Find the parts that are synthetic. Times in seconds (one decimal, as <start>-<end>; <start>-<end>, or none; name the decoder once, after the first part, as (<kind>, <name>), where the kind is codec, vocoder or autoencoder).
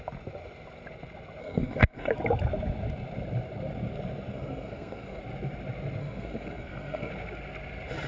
1.4-2.1 (codec, SNAC); 4.3-5.2; 6.0-7.1